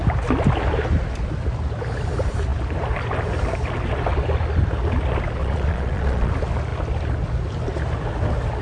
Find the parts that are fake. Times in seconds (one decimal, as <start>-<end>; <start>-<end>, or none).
5.4-6.3